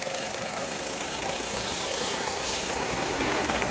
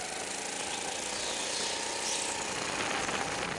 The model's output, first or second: first